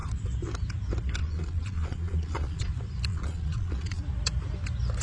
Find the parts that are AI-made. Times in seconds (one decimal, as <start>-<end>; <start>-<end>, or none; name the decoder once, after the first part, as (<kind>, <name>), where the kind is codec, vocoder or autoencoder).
1.2-2.7 (vocoder, Vocos); 3.1-4.0